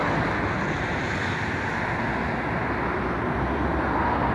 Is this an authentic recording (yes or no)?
yes